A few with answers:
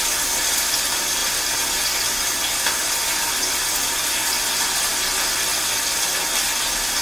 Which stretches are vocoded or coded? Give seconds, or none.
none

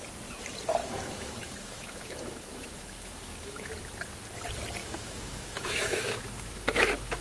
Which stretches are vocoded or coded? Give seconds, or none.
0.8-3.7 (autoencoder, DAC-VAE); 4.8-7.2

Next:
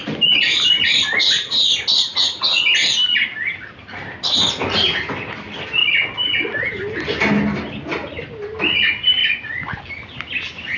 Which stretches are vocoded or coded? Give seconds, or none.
none

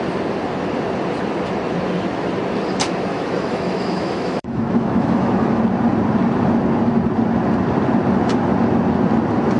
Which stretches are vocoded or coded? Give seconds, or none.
3.1-5.6 (autoencoder, DAC-VAE)